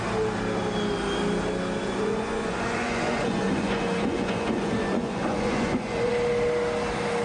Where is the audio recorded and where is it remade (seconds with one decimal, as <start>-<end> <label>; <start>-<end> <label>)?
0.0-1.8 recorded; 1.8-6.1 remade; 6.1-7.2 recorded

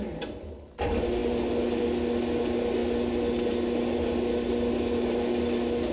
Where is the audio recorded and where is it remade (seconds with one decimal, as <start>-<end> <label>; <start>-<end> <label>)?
0.0-5.9 recorded

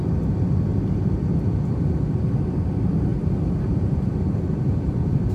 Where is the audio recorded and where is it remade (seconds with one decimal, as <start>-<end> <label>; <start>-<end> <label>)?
0.0-3.1 recorded; 3.1-5.3 remade

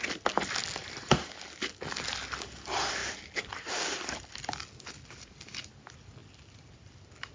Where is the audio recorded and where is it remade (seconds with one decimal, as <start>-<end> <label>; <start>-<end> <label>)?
0.0-0.8 recorded; 0.8-1.4 remade; 1.4-7.3 recorded

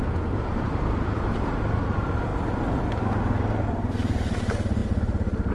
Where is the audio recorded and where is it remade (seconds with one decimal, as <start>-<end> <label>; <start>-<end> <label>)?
0.0-2.3 remade; 2.3-3.8 recorded; 3.8-5.5 remade

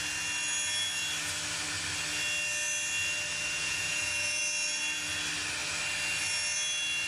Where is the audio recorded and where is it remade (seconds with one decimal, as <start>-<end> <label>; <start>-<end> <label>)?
0.0-3.6 recorded; 3.6-4.4 remade; 4.4-7.1 recorded